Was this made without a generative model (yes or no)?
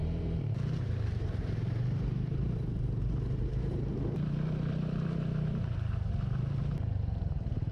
no